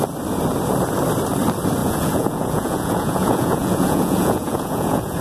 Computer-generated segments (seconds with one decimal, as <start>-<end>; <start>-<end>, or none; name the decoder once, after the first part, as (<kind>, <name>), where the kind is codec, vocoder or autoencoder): 1.8-5.2 (vocoder, Vocos)